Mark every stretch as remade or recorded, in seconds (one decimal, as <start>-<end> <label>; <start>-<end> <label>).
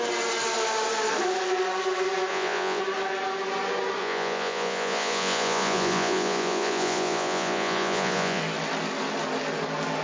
0.0-2.3 recorded; 2.3-2.8 remade; 2.8-4.0 recorded; 4.0-8.4 remade; 8.4-10.0 recorded